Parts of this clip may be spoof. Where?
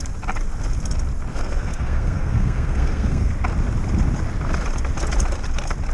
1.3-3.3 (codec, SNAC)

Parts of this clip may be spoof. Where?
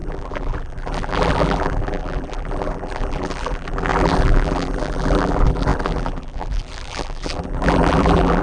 0.0-8.4 (vocoder, BigVGAN v2)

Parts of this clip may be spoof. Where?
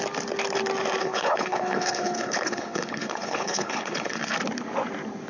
1.0-4.2 (codec, HILCodec)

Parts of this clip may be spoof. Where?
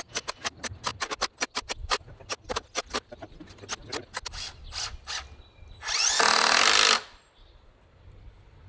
none